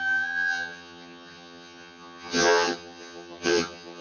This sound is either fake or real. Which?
fake